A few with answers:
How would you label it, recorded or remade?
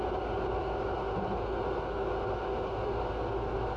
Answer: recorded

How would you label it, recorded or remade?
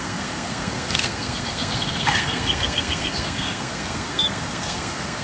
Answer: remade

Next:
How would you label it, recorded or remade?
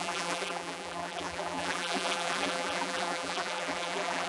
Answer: remade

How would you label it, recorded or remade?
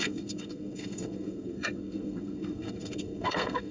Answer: remade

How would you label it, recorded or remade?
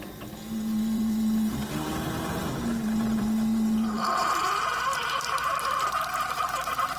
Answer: remade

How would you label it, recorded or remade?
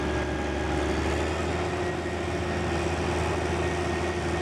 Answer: recorded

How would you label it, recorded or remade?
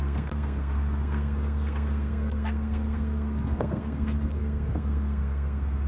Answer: remade